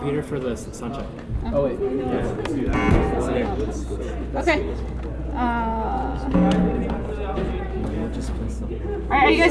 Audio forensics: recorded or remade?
recorded